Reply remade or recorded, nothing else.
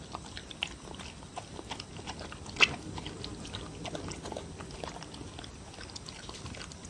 recorded